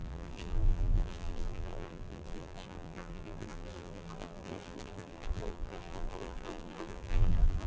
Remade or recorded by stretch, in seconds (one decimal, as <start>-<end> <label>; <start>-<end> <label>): 0.0-7.7 remade